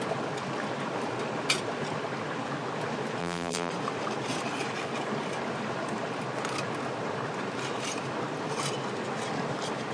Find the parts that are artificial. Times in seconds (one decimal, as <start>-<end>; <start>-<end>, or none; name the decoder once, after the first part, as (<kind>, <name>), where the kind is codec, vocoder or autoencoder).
3.2-3.7 (vocoder, BigVGAN v2)